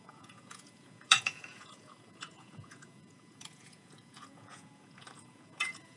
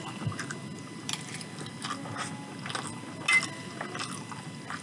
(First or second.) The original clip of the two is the second